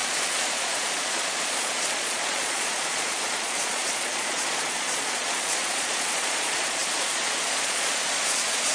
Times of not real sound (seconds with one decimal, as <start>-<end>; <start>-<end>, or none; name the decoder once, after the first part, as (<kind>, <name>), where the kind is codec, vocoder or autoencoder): 0.0-8.7 (vocoder, Vocos)

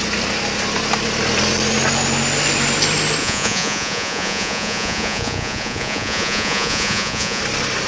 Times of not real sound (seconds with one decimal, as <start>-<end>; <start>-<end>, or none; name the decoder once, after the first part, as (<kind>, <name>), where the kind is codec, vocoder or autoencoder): 3.2-7.4 (vocoder, Vocos)

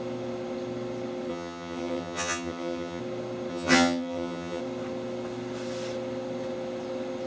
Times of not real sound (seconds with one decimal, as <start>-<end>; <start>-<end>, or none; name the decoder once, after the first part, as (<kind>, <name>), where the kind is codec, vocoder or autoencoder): 1.3-3.0 (vocoder, HiFi-GAN); 3.5-4.6

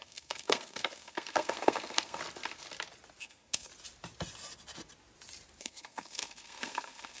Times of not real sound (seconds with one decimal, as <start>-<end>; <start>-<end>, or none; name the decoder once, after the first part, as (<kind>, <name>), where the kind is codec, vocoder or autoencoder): 0.0-2.2 (codec, SNAC); 3.2-3.7; 5.6-7.2

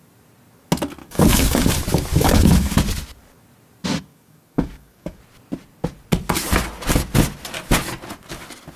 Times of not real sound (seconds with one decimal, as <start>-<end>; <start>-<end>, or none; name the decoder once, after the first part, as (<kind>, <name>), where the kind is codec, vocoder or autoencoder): 1.0-1.7 (codec, DAC); 2.1-2.8; 4.1-5.2

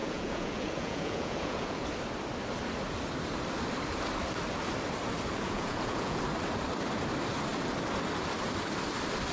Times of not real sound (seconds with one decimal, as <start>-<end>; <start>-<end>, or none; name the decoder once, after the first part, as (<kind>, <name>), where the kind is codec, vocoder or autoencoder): 0.0-1.9 (vocoder, Vocos); 5.3-6.2